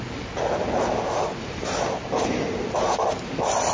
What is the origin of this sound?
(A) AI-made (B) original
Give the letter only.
B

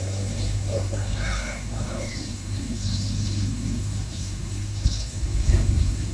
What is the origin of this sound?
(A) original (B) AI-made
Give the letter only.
B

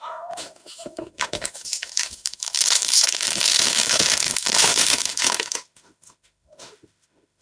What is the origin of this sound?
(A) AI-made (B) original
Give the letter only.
A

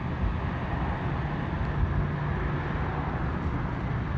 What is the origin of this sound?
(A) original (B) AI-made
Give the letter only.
A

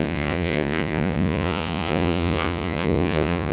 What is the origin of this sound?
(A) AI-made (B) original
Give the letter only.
A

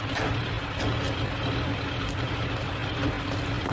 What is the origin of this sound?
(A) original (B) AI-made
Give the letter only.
A